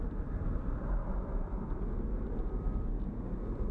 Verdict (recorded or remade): recorded